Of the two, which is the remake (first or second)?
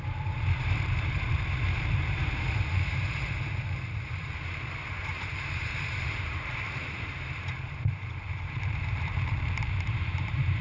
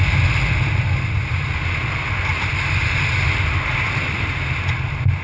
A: first